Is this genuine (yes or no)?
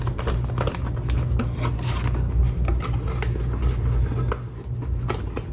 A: yes